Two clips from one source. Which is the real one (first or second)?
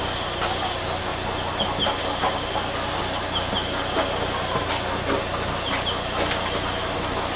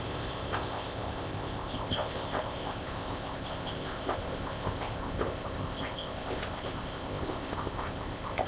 first